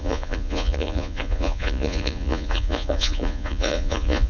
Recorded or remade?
remade